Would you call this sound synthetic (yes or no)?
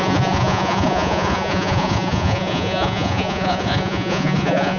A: yes